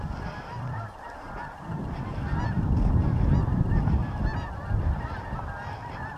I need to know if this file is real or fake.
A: real